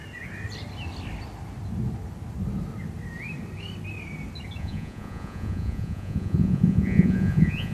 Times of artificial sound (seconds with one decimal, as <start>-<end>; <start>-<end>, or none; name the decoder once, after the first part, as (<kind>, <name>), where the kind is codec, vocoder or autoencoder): 4.6-7.7 (vocoder, Vocos)